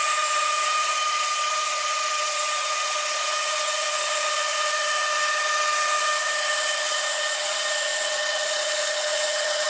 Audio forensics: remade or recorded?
remade